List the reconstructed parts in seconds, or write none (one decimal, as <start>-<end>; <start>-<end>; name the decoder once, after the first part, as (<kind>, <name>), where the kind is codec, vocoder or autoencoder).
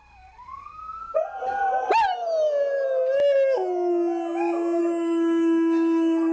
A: 0.0-1.0 (codec, SNAC); 4.8-6.3